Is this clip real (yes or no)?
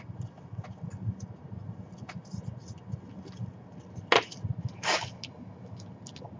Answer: yes